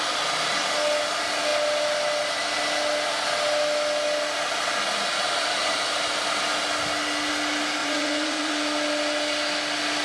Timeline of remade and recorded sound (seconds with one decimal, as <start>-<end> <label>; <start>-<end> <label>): 0.0-7.8 recorded; 7.8-8.5 remade; 8.5-10.0 recorded